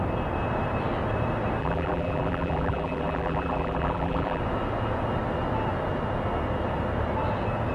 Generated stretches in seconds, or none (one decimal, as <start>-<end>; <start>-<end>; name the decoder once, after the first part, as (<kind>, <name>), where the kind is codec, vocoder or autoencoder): 1.6-4.4 (vocoder, BigVGAN v2)